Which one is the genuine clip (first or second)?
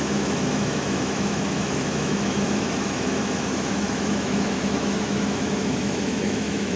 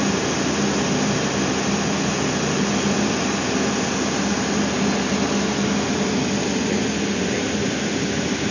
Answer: second